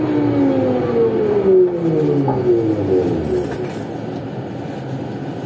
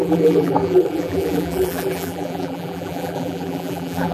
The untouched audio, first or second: first